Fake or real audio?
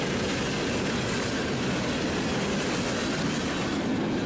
real